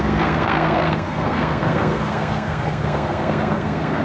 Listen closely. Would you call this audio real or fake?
fake